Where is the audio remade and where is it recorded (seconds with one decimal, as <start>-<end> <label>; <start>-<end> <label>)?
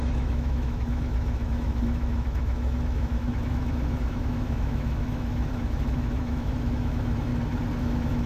0.0-7.3 remade; 7.3-7.8 recorded; 7.8-8.3 remade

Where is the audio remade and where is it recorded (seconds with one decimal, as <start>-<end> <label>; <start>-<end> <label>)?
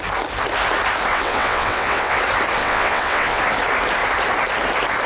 0.0-1.1 recorded; 1.1-2.2 remade; 2.2-2.6 recorded; 2.6-3.4 remade; 3.4-5.1 recorded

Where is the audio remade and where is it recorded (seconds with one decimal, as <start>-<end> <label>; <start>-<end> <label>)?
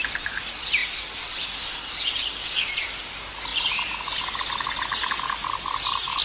0.0-3.5 remade; 3.5-5.1 recorded; 5.1-6.2 remade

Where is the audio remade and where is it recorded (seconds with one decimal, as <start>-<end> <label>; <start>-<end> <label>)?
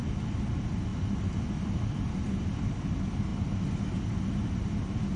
0.0-5.2 recorded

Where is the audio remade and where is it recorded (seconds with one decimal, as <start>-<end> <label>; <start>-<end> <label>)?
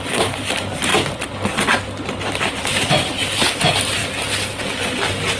0.0-0.9 remade; 0.9-2.3 recorded; 2.3-4.0 remade; 4.0-4.8 recorded; 4.8-5.4 remade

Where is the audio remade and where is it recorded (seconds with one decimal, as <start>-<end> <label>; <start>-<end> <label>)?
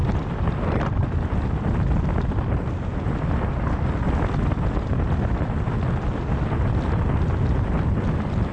0.0-8.5 recorded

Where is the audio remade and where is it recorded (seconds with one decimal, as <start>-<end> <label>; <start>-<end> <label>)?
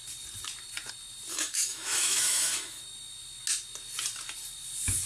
0.0-1.3 recorded; 1.3-2.8 remade; 2.8-5.1 recorded